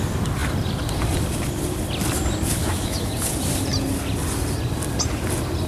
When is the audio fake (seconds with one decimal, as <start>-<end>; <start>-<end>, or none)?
2.6-3.1